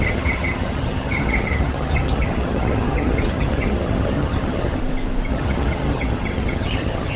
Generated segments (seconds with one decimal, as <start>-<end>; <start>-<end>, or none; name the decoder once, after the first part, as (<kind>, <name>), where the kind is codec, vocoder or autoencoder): 0.0-4.8 (vocoder, HiFi-GAN); 5.3-7.2